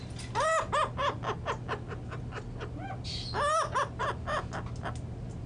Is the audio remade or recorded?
recorded